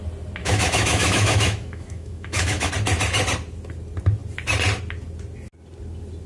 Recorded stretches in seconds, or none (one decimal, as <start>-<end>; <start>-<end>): 0.0-0.4; 2.7-6.3